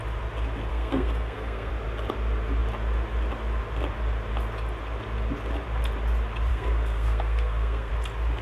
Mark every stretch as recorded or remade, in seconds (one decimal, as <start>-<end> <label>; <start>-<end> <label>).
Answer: 0.0-0.7 recorded; 0.7-1.7 remade; 1.7-6.5 recorded; 6.5-7.9 remade; 7.9-8.4 recorded